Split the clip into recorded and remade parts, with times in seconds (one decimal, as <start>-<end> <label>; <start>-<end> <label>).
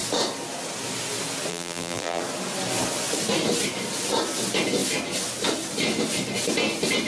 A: 0.0-1.5 recorded; 1.5-2.2 remade; 2.2-7.1 recorded